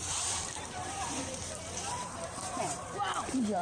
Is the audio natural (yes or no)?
no